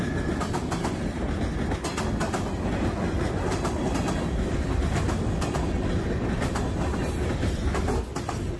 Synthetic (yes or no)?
no